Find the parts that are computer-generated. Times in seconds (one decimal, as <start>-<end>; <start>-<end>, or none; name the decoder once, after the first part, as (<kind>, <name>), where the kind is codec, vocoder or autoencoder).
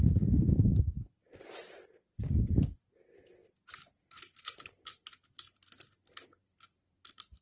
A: 0.0-0.7 (vocoder, BigVGAN v2); 2.2-3.4; 4.4-7.4